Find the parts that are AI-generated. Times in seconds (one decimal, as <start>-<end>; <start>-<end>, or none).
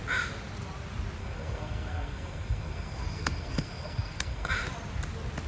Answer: 1.2-4.5